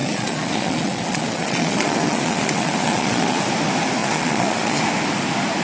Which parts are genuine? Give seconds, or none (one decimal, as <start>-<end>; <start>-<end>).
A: 3.4-4.0; 4.8-5.6